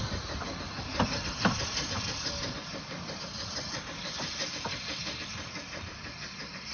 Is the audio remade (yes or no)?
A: yes